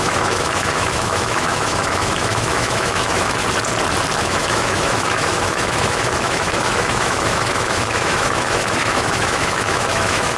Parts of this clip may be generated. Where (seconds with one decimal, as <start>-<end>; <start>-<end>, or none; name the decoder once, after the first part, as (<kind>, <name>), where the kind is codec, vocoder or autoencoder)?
0.0-3.4 (autoencoder, DAC-VAE); 4.2-10.4